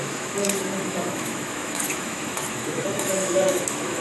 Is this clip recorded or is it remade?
remade